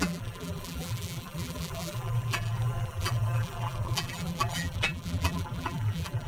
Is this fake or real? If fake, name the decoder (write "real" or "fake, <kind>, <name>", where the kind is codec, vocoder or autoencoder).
fake, vocoder, BigVGAN v2